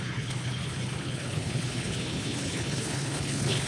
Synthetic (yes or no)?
yes